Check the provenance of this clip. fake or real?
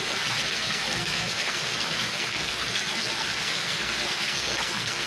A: fake